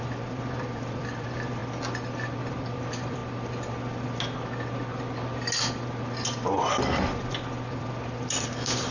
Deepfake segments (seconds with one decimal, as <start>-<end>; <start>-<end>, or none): 0.0-1.6; 2.5-3.2; 6.7-8.9